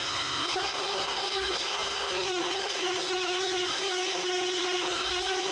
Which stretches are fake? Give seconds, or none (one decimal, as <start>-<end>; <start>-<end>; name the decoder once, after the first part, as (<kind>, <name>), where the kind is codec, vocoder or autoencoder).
0.0-5.5 (codec, SNAC)